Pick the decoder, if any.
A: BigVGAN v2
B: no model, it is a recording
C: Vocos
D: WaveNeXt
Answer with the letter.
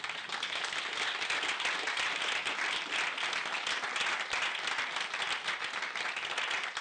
B